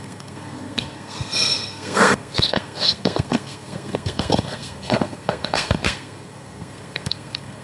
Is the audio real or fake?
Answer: fake